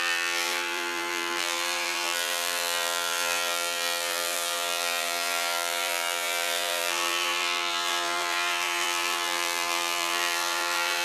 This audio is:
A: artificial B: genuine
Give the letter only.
A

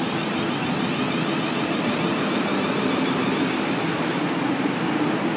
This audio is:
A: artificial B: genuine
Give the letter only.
B